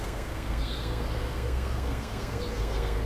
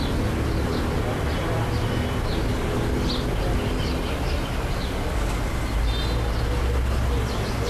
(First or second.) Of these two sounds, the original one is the second